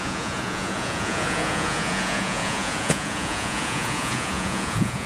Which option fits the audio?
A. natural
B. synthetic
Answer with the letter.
B